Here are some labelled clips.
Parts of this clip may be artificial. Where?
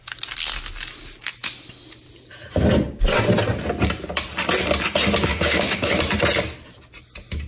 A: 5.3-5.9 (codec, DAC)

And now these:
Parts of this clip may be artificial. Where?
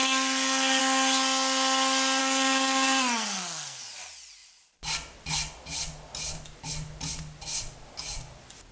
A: 0.0-0.8 (codec, SNAC); 2.2-3.8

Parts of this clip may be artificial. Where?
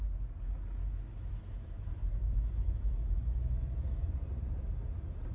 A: 0.8-4.0 (autoencoder, DAC-VAE)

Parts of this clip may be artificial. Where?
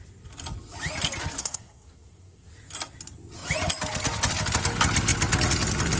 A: 1.4-2.5 (codec, SNAC)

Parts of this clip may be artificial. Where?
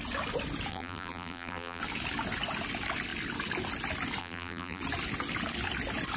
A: 0.7-1.8 (vocoder, BigVGAN v2); 4.2-4.8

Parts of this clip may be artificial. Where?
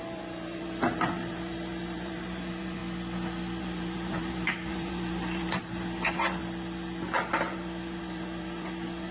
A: 0.0-2.8 (vocoder, BigVGAN v2); 3.6-6.4; 7.4-9.1